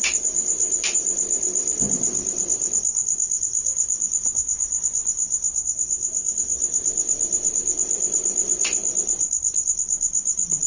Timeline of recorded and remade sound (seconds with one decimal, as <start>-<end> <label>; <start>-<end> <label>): 0.0-5.2 remade; 5.2-7.5 recorded; 7.5-10.7 remade